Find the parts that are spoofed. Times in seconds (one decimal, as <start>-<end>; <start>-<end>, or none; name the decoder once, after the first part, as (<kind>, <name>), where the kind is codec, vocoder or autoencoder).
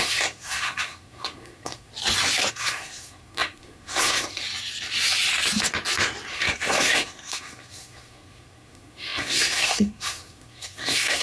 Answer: 0.0-1.9 (codec, SNAC); 2.5-4.4; 6.3-11.2